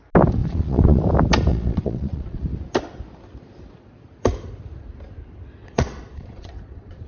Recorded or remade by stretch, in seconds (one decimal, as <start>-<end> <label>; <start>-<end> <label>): 0.0-0.4 recorded; 0.4-1.0 remade; 1.0-1.5 recorded; 1.5-2.5 remade; 2.5-5.6 recorded; 5.6-7.1 remade